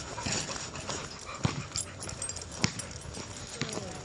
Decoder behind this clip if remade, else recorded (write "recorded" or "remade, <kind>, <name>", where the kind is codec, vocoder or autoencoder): recorded